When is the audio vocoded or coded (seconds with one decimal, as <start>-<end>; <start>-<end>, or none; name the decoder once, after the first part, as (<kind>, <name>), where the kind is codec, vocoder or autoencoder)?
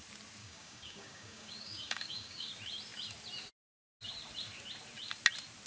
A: 0.4-2.5 (codec, DAC)